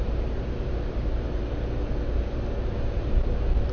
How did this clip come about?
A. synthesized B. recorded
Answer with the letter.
B